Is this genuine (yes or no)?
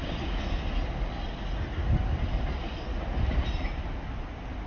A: yes